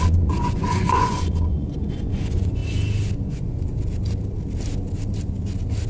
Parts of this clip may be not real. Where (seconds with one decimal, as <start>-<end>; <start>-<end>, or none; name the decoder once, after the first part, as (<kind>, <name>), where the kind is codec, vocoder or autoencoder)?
0.0-2.6 (vocoder, Vocos); 3.3-3.7